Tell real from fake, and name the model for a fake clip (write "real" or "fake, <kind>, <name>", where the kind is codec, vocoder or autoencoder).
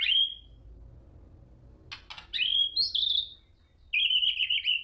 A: real